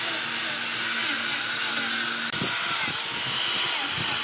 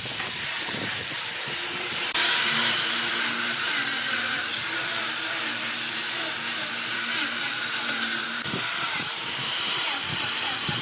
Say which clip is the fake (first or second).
second